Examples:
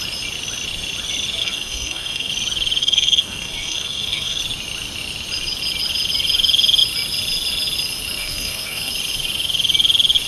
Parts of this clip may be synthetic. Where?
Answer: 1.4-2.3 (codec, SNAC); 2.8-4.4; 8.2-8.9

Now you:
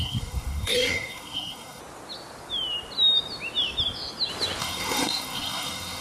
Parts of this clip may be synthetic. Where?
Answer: 0.0-1.8 (codec, SNAC); 4.6-6.0

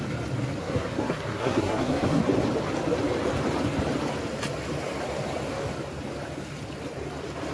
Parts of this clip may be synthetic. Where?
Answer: 0.6-2.2 (codec, SNAC)

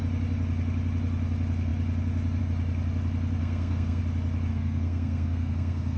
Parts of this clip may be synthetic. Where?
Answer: 3.4-4.0 (codec, SNAC); 4.5-6.0

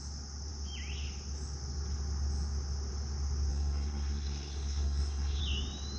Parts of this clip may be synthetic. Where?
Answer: 3.5-5.4 (codec, SNAC)

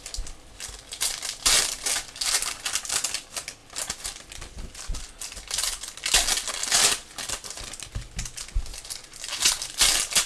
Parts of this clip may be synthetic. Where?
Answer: none

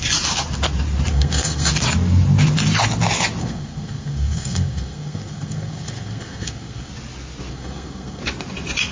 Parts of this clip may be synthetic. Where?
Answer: 1.1-1.7 (codec, SNAC); 3.4-6.9; 7.5-8.2